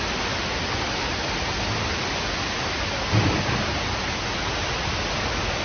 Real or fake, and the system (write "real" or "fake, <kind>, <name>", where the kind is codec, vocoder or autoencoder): real